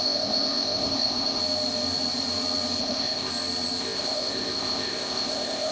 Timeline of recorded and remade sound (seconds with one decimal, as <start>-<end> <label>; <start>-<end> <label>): 0.0-1.4 remade; 1.4-2.8 recorded; 2.8-3.3 remade; 3.3-3.8 recorded; 3.8-5.7 remade